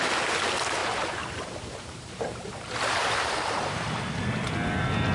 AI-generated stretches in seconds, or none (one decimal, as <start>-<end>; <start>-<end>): 0.8-3.9

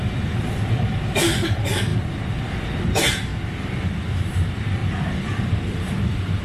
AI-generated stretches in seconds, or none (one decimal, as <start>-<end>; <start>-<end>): 0.0-1.9; 2.8-3.3; 4.0-6.4

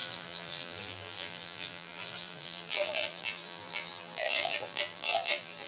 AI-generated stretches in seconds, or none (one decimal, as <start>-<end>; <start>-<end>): 0.0-5.7

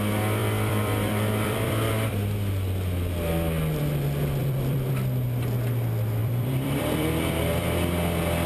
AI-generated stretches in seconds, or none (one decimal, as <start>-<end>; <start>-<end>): 0.4-1.9; 4.4-4.9; 6.2-8.5

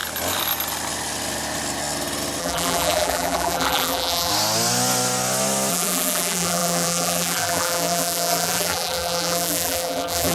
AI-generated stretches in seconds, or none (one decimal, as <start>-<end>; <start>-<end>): 2.4-4.3; 5.7-10.3

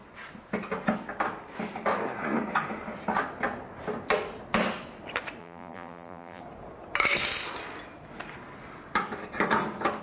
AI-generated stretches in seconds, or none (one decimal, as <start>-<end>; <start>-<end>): 5.4-6.4

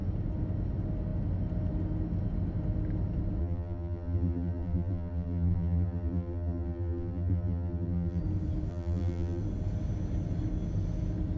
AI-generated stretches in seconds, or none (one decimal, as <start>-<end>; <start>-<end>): 3.4-8.2; 8.7-9.4

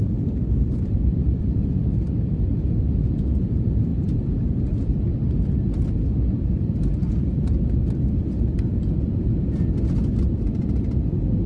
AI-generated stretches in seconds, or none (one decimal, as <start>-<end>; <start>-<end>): 0.0-5.1; 7.1-9.3; 10.2-11.5